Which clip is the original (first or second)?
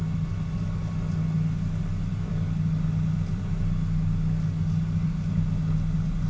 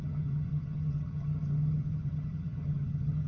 first